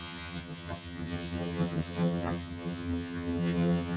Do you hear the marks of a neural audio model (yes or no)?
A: yes